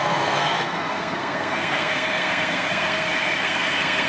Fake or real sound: fake